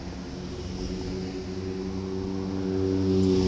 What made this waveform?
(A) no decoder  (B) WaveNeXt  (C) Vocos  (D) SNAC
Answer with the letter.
A